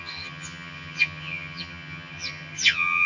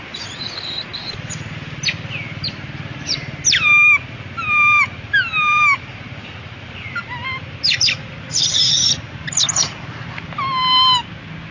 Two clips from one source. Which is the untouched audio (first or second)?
second